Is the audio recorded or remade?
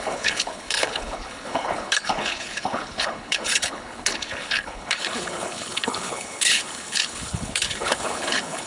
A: remade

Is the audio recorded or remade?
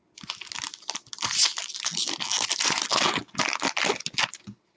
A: recorded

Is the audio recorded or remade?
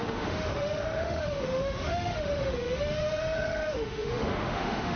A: remade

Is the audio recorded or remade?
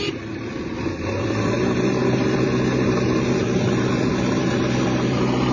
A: recorded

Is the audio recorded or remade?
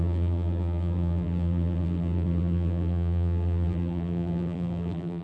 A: remade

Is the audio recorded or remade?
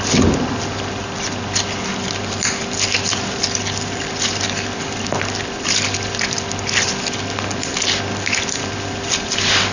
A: recorded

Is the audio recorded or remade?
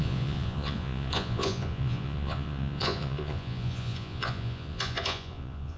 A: remade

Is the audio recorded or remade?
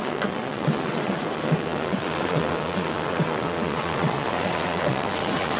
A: remade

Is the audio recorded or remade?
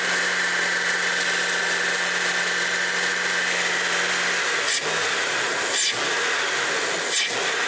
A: recorded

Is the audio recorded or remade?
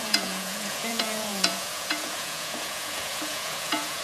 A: remade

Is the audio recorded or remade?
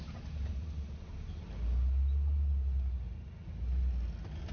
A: recorded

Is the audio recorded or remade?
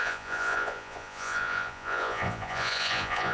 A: remade